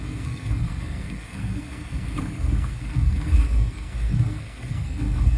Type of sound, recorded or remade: remade